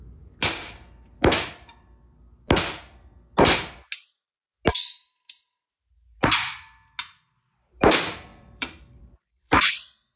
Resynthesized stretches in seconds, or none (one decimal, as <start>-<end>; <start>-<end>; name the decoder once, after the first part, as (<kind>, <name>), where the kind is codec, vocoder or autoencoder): 8.3-9.7 (vocoder, BigVGAN v2)